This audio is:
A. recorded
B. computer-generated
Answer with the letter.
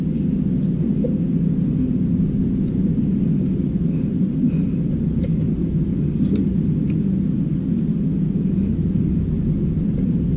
A